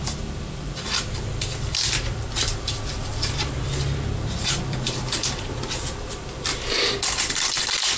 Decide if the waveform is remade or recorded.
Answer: remade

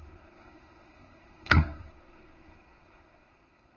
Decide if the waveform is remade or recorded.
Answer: remade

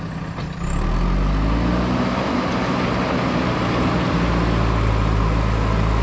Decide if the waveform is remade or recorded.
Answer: recorded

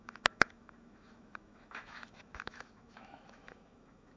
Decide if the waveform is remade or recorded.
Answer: remade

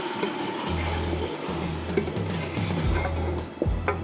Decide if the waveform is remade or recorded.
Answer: recorded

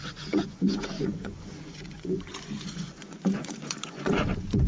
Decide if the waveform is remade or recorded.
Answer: remade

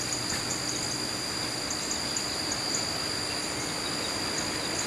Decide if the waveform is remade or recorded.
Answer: recorded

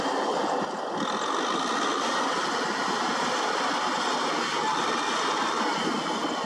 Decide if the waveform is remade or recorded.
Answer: recorded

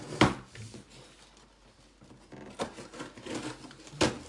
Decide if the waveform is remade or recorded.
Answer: recorded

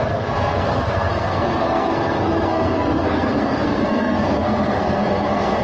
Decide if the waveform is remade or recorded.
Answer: remade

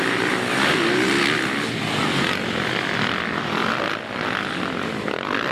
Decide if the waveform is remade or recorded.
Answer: recorded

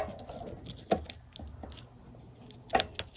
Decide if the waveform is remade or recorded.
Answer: recorded